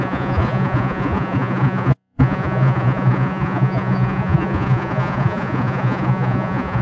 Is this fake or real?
fake